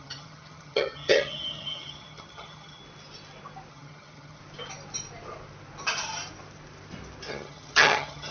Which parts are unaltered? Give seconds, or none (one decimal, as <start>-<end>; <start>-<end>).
2.8-3.7; 4.4-7.3